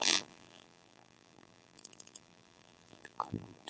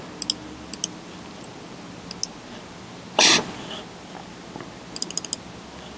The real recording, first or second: second